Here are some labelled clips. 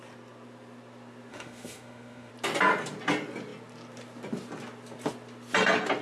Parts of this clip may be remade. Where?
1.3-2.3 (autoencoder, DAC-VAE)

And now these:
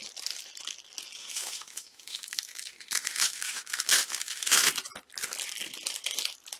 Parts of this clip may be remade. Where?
1.2-4.7 (autoencoder, DAC-VAE)

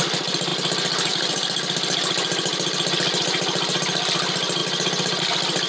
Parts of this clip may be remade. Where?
none

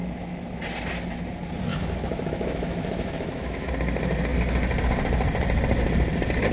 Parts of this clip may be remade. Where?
0.0-0.6 (autoencoder, DAC-VAE); 1.7-3.7

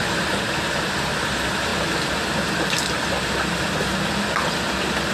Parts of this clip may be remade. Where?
none